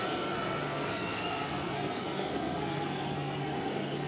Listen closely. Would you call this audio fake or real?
fake